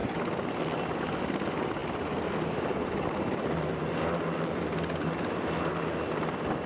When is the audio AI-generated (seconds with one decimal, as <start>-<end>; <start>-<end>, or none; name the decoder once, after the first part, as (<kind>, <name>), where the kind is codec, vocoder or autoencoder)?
none

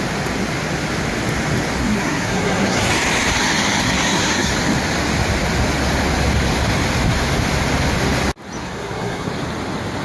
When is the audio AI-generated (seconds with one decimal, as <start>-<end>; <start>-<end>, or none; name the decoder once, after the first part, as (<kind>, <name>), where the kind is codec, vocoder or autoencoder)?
1.8-2.9 (codec, SNAC); 3.8-4.5; 8.6-9.3

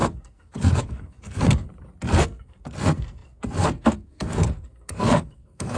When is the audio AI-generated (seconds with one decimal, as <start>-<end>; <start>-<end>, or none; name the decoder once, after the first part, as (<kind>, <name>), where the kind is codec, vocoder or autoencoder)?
0.0-1.7 (codec, SNAC); 2.2-5.8

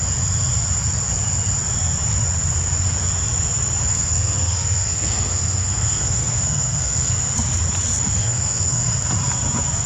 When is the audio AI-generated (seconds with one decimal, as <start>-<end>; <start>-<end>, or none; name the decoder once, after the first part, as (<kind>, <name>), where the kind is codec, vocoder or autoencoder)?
3.9-7.1 (codec, SNAC); 8.2-8.9

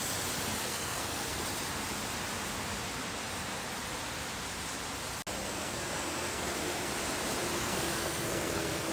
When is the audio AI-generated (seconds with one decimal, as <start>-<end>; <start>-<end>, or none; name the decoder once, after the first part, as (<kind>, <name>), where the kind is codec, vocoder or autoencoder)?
0.6-1.4 (codec, SNAC); 5.4-6.9; 7.6-8.9